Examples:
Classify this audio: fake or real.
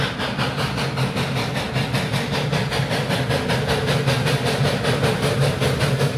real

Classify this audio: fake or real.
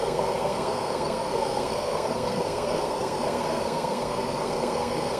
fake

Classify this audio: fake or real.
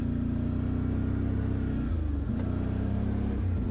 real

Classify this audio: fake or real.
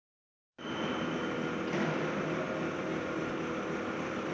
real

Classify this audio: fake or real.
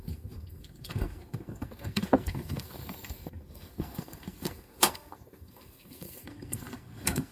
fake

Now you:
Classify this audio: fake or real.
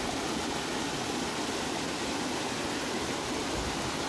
real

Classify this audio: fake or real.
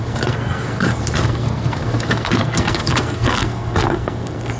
fake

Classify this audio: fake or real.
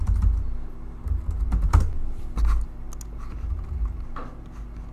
real